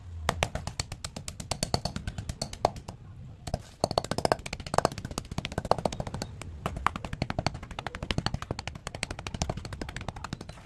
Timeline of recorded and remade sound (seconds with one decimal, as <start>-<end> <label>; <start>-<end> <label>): 0.0-8.8 recorded; 8.8-10.0 remade; 10.0-10.7 recorded